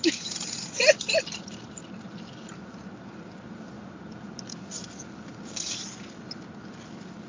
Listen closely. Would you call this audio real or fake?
real